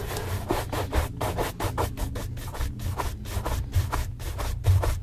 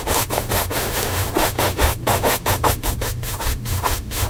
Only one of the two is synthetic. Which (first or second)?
second